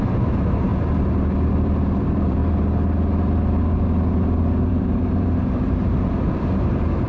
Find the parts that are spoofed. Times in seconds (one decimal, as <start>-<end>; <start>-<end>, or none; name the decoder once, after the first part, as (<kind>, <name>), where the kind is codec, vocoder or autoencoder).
0.0-0.7 (vocoder, BigVGAN v2); 1.6-2.4; 4.7-7.1